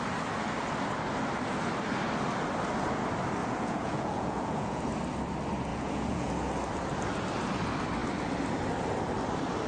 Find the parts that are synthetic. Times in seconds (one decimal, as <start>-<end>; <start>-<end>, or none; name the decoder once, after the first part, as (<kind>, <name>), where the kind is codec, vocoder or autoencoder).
3.4-4.8 (vocoder, Vocos); 5.7-6.3